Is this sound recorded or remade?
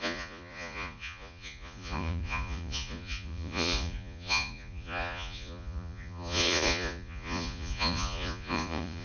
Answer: remade